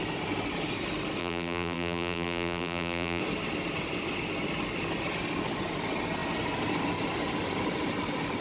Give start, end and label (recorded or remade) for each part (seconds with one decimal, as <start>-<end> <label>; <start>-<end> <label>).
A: 0.0-1.2 recorded; 1.2-3.2 remade; 3.2-8.4 recorded